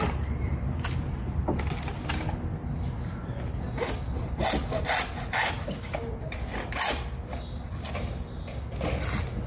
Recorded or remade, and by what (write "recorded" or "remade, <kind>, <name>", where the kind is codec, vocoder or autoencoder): recorded